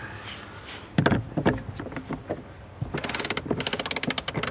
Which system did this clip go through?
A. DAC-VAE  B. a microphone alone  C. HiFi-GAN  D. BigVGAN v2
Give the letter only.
B